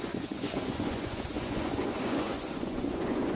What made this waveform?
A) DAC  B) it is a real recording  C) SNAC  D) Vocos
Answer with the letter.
D